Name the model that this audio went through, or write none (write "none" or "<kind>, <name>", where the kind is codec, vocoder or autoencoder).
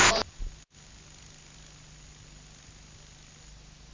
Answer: none